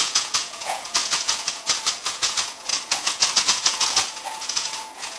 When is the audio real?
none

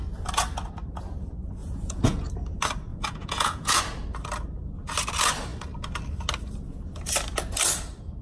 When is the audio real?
0.0-1.6; 2.3-2.9; 3.8-8.2

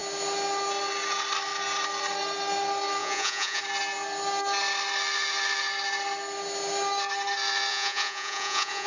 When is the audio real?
0.0-3.0; 3.6-7.7

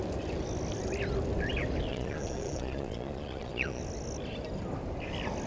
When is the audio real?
0.0-1.9; 3.8-5.5

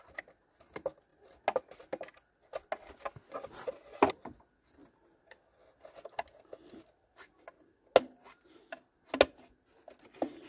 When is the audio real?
0.0-10.5

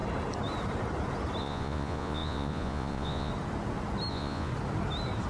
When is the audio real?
0.0-1.4; 3.3-4.1; 4.5-5.3